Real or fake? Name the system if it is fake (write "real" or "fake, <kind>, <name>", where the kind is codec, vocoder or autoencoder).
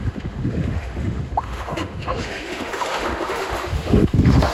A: fake, autoencoder, DAC-VAE